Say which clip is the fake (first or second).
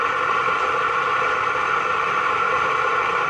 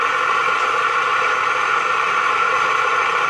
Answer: first